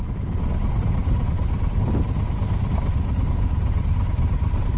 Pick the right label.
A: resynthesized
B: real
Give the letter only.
A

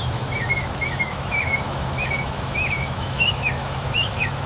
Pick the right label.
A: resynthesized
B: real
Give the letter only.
A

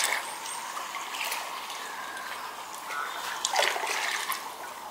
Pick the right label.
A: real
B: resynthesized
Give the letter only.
A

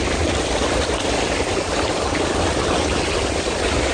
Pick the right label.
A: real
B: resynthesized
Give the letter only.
A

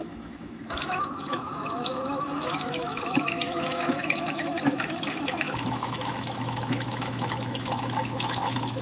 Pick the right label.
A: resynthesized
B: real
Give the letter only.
A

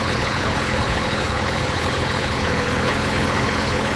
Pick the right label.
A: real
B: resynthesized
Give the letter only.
B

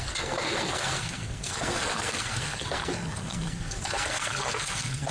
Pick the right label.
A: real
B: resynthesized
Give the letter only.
B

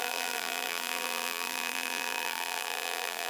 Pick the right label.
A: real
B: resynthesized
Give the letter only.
B